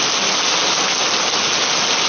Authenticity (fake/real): real